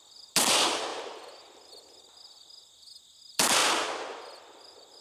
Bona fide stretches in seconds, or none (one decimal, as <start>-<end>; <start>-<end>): 0.0-0.9; 1.7-5.0